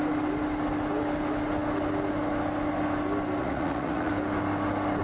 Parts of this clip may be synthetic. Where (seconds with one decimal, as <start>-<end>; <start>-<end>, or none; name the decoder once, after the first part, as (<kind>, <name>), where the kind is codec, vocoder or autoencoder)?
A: 3.4-4.1 (vocoder, Vocos)